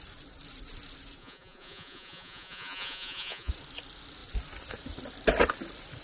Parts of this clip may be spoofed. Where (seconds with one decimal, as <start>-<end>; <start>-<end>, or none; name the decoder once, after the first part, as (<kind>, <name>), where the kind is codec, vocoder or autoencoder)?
1.2-3.5 (vocoder, Vocos)